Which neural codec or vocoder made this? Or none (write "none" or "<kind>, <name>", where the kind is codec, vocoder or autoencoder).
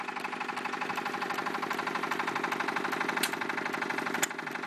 none